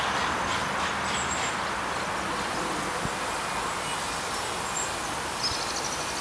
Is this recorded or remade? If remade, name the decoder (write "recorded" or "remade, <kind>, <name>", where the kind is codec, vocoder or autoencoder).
recorded